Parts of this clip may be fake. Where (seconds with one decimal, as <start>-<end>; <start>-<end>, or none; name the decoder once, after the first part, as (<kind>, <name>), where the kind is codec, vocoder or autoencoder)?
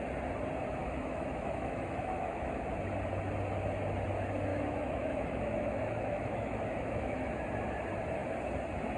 0.8-2.7 (autoencoder, DAC-VAE); 4.5-7.3